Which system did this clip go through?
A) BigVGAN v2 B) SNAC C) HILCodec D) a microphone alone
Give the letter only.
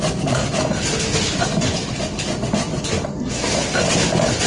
D